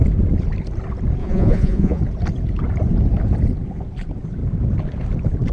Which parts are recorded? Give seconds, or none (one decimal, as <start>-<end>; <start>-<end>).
0.0-1.2; 2.0-5.5